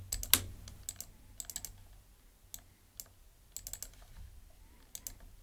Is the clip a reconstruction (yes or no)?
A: no